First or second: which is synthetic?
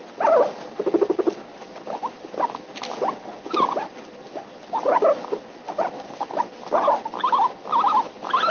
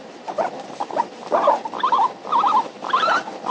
second